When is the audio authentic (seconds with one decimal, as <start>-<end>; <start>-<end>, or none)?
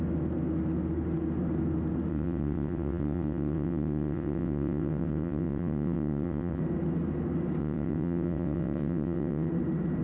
0.0-2.1; 6.6-7.6; 9.5-10.0